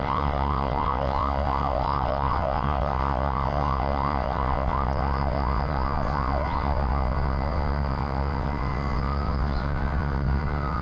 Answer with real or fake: fake